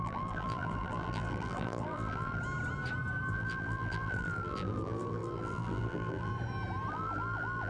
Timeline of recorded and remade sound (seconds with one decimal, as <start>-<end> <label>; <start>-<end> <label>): 0.0-2.4 remade; 2.4-3.3 recorded; 3.3-6.3 remade; 6.3-6.9 recorded; 6.9-7.7 remade